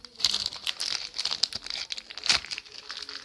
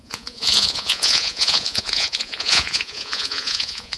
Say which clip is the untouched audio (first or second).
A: first